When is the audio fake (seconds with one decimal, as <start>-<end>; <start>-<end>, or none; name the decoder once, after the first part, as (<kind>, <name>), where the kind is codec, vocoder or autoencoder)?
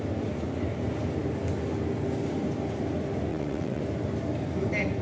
3.3-3.8 (vocoder, WaveNeXt)